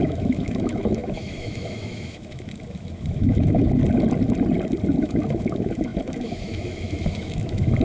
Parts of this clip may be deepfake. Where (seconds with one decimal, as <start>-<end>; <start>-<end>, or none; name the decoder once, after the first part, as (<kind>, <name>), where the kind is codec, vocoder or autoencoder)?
0.0-3.8 (autoencoder, DAC-VAE); 5.0-7.8